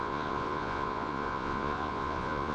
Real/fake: fake